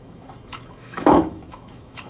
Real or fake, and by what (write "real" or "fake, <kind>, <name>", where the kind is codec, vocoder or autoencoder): fake, autoencoder, DAC-VAE